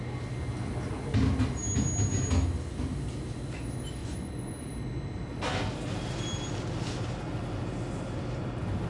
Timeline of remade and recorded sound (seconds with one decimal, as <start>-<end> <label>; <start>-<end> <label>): 0.0-4.0 recorded; 4.0-4.7 remade; 4.7-8.9 recorded